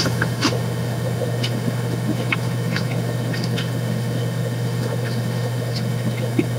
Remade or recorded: remade